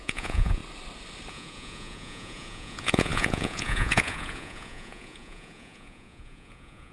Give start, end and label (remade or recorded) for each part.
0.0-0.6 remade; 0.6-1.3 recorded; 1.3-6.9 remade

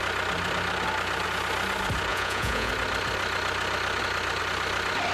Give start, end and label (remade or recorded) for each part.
0.0-2.1 recorded; 2.1-2.7 remade; 2.7-5.1 recorded

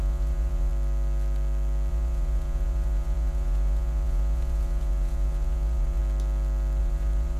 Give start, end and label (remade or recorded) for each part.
0.0-0.7 remade; 0.7-1.9 recorded; 1.9-6.0 remade; 6.0-6.8 recorded; 6.8-7.4 remade

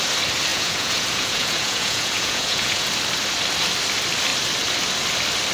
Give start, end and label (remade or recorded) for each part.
0.0-0.5 recorded; 0.5-2.9 remade; 2.9-5.5 recorded

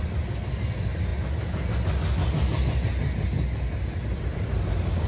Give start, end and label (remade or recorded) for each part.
0.0-5.1 recorded

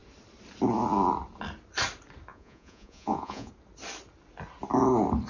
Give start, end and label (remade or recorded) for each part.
0.0-2.3 recorded; 2.3-3.5 remade; 3.5-5.3 recorded